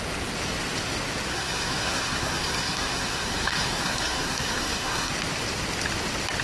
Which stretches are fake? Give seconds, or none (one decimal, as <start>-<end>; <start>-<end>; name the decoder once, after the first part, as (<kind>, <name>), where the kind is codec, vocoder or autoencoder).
1.3-5.1 (codec, SNAC)